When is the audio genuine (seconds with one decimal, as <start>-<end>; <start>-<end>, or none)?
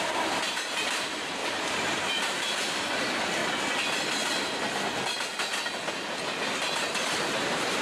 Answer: 3.4-7.0